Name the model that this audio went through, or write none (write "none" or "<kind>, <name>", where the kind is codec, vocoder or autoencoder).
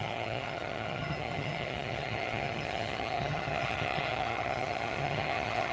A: vocoder, HiFi-GAN